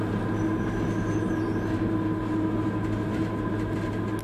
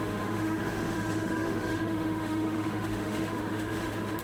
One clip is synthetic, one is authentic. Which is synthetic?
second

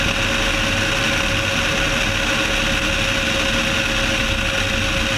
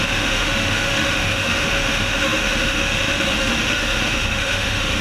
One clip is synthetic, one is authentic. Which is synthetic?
second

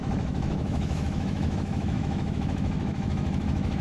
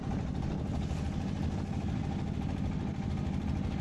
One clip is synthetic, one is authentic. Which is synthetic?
first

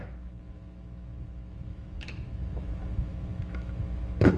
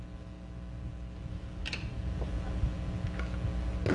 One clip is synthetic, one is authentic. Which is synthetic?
first